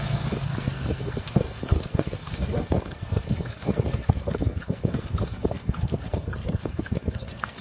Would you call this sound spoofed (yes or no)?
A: yes